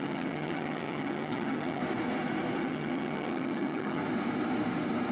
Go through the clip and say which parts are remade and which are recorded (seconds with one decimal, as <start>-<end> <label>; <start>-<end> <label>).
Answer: 0.0-1.8 remade; 1.8-2.6 recorded; 2.6-4.0 remade; 4.0-5.1 recorded